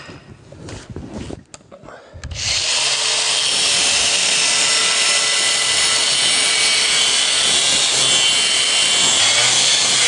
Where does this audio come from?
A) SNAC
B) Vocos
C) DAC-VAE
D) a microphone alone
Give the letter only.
D